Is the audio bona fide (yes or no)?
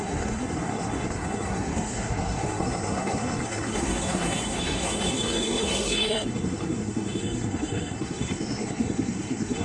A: no